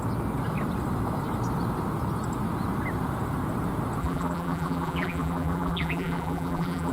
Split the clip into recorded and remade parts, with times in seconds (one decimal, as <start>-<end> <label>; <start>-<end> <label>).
0.0-4.0 recorded; 4.0-6.9 remade